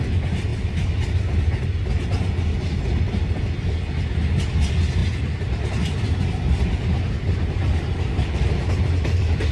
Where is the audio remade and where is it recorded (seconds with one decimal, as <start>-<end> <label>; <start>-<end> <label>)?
0.0-9.5 recorded